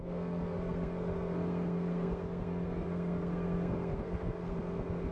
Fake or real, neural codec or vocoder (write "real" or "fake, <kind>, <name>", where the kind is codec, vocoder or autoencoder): fake, codec, SNAC